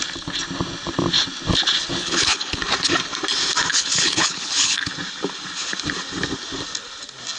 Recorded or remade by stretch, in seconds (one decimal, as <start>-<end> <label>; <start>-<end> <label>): 0.0-2.0 recorded; 2.0-2.6 remade; 2.6-3.7 recorded; 3.7-4.9 remade; 4.9-7.4 recorded